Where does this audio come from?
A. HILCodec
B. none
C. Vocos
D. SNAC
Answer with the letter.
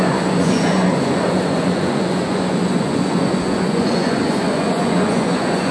C